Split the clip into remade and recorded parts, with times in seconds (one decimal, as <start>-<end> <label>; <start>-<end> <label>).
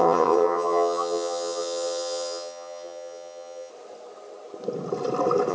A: 0.0-3.7 remade; 3.7-5.5 recorded